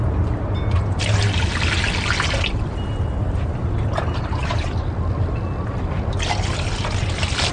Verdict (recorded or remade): recorded